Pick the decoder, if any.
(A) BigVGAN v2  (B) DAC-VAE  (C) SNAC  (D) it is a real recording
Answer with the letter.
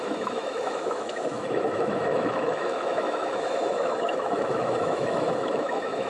B